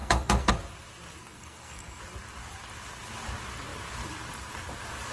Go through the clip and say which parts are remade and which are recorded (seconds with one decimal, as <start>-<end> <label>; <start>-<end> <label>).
0.0-0.5 remade; 0.5-1.2 recorded; 1.2-2.0 remade; 2.0-5.1 recorded